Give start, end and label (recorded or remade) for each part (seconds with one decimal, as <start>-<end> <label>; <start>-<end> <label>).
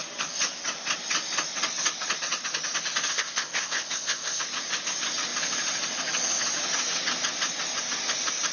0.0-3.1 recorded; 3.1-4.4 remade; 4.4-8.5 recorded